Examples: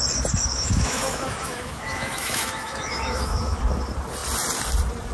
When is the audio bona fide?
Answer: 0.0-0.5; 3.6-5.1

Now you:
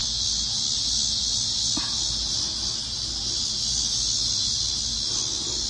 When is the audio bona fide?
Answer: 0.0-5.7

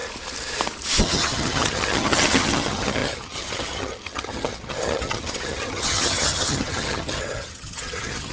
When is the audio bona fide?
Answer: 0.0-1.0

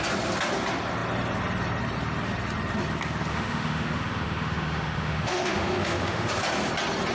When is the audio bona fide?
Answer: 0.0-3.3; 6.3-7.1

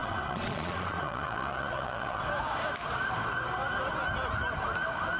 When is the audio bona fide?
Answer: 2.2-5.2

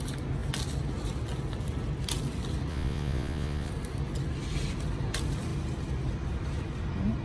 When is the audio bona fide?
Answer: 0.0-2.7; 3.7-7.2

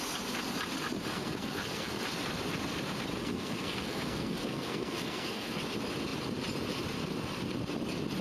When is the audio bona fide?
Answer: 0.0-1.1; 2.0-3.2; 5.6-8.2